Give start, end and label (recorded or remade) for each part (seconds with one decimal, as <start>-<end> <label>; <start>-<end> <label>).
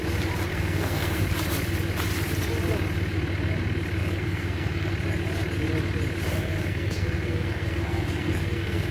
0.0-0.5 recorded; 0.5-1.2 remade; 1.2-4.0 recorded; 4.0-4.9 remade; 4.9-6.3 recorded; 6.3-8.9 remade